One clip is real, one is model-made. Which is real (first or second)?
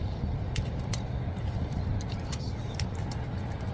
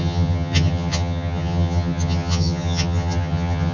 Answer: first